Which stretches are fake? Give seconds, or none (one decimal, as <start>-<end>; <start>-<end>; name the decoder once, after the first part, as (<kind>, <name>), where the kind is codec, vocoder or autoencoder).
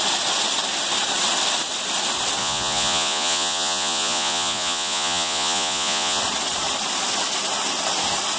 2.4-6.2 (vocoder, Vocos)